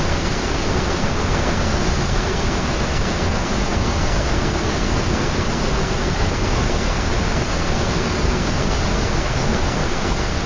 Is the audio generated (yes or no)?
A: yes